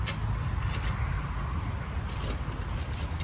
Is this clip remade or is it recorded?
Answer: recorded